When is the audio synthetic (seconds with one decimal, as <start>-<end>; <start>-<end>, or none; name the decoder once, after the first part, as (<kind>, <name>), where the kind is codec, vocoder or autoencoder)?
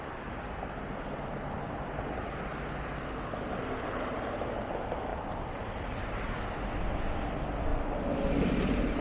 5.1-6.5 (vocoder, BigVGAN v2); 7.7-8.4